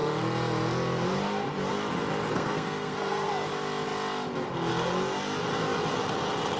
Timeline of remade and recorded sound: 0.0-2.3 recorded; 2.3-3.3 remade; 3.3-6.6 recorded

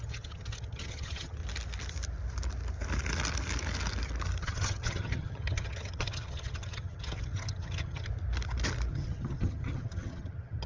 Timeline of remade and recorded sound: 0.0-1.4 remade; 1.4-4.4 recorded; 4.4-8.1 remade; 8.1-8.9 recorded; 8.9-10.7 remade

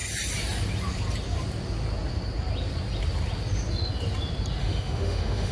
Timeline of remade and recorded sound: 0.0-4.6 recorded; 4.6-5.5 remade

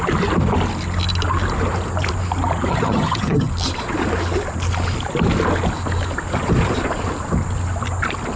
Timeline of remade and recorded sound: 0.0-2.7 recorded; 2.7-3.5 remade; 3.5-8.4 recorded

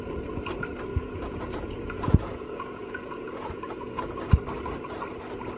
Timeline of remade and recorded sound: 0.0-0.9 recorded; 0.9-4.2 remade; 4.2-5.6 recorded